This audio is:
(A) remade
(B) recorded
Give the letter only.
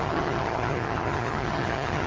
A